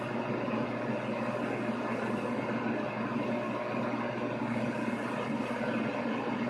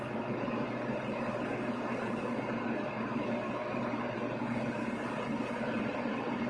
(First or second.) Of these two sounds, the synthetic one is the second